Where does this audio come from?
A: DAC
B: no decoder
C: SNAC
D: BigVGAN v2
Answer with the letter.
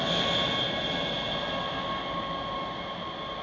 B